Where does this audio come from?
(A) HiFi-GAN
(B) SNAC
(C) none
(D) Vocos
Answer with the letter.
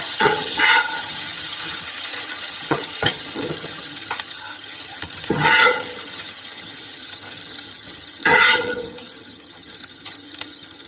A